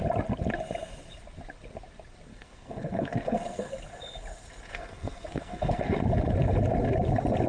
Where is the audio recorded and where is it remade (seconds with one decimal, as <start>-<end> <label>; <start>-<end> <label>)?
0.0-2.3 recorded; 2.3-3.7 remade; 3.7-4.7 recorded; 4.7-5.8 remade; 5.8-7.5 recorded